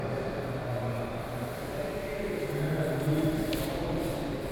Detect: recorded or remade recorded